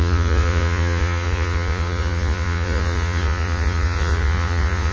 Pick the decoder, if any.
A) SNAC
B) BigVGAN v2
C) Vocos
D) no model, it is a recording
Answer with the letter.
C